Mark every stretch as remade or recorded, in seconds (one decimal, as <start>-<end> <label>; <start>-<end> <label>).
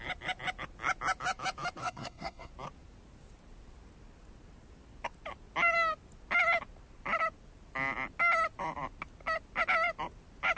0.0-1.8 recorded; 1.8-2.5 remade; 2.5-10.6 recorded